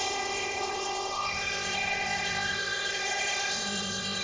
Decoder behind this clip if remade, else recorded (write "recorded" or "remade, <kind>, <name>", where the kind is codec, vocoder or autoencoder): remade, codec, ZipCodec